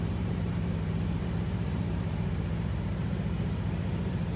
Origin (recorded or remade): remade